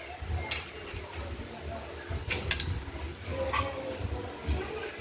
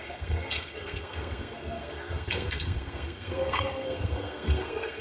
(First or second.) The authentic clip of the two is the first